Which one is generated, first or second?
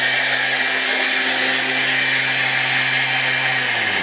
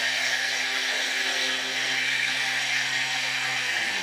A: second